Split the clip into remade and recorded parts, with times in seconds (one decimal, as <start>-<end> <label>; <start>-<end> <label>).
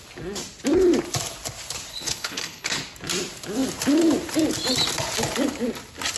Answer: 0.0-1.9 recorded; 1.9-2.8 remade; 2.8-6.2 recorded